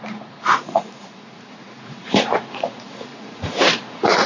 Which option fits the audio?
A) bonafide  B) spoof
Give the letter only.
B